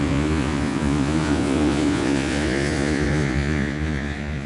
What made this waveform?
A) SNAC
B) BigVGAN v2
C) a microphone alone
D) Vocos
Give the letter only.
D